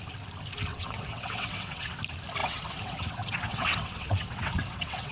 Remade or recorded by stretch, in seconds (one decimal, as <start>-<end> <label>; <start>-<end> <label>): 0.0-0.7 recorded; 0.7-2.0 remade; 2.0-2.4 recorded; 2.4-5.1 remade